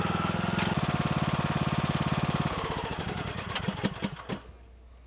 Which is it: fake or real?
real